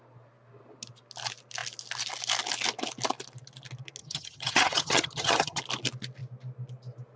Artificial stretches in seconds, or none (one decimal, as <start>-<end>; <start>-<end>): 4.0-5.6